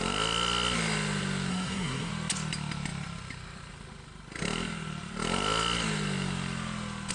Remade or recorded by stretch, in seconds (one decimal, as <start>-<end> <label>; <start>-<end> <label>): 0.0-1.5 recorded; 1.5-2.1 remade; 2.1-7.1 recorded